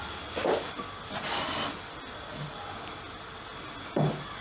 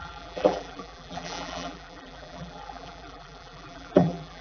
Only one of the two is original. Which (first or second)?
first